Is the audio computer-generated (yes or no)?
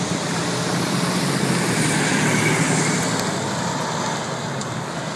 no